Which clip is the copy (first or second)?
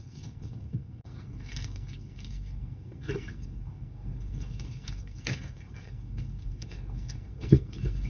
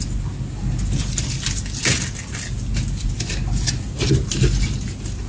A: first